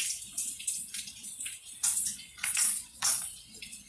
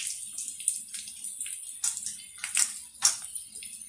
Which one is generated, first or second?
first